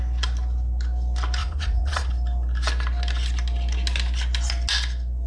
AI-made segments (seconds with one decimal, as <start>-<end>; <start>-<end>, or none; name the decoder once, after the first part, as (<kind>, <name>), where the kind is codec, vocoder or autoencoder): 1.4-2.1 (vocoder, Vocos)